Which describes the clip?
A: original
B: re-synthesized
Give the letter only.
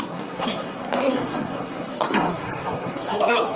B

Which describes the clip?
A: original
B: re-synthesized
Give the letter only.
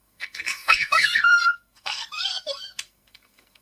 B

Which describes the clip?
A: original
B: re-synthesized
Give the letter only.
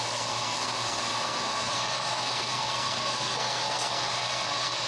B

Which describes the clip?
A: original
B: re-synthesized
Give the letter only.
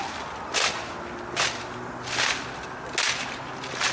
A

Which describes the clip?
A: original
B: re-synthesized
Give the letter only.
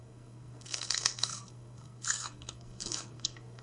B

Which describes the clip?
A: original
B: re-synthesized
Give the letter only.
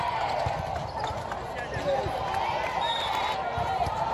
A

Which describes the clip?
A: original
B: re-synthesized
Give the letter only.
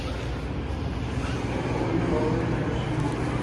A